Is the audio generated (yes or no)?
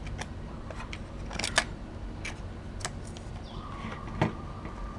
no